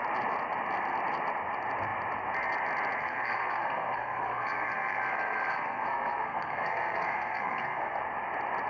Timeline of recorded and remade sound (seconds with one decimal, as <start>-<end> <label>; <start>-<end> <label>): 0.0-3.0 recorded; 3.0-8.0 remade; 8.0-8.7 recorded